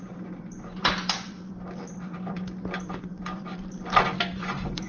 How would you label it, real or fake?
fake